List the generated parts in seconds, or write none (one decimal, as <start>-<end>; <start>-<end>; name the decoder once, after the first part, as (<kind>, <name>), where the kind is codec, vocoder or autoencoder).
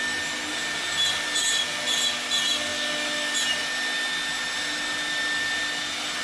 none